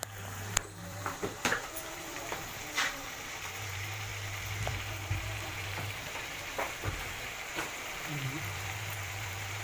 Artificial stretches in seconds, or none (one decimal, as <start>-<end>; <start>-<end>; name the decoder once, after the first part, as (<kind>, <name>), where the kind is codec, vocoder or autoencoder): 0.0-4.1 (vocoder, BigVGAN v2); 4.7-9.6